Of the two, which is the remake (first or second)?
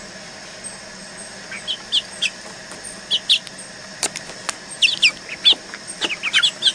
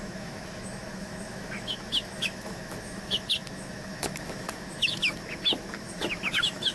second